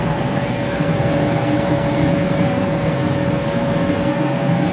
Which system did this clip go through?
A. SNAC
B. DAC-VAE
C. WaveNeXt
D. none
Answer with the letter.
A